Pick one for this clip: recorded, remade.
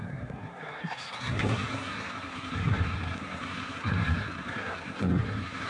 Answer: remade